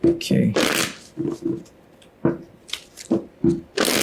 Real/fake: real